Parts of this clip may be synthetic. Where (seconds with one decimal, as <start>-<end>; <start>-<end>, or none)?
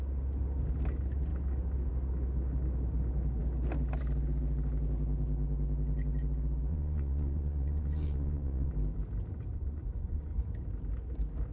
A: 6.7-8.7; 9.5-10.4